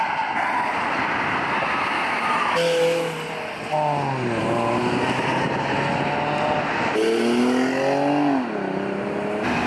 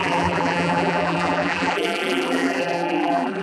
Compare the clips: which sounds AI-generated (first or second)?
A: second